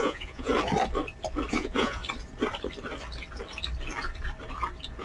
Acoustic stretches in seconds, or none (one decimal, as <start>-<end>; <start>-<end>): 0.5-1.5; 2.0-5.0